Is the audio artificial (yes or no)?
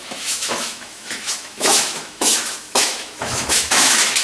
yes